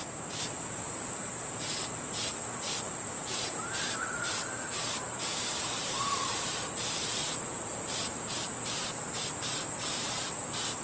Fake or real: fake